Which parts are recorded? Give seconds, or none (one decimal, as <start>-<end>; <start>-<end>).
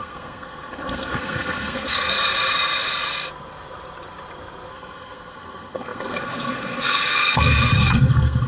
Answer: 2.1-4.7